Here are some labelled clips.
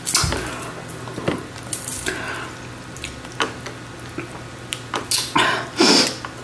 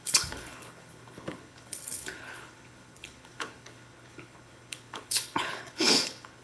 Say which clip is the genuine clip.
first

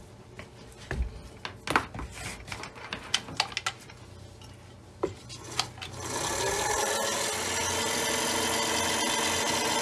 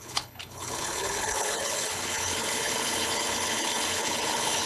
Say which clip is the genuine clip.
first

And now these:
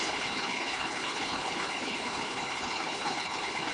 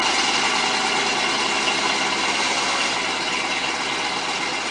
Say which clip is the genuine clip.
second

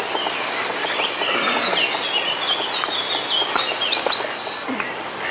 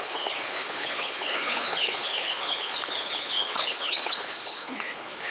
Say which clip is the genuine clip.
first